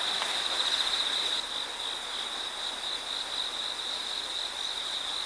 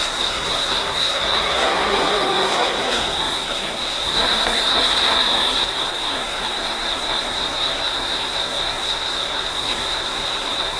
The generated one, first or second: second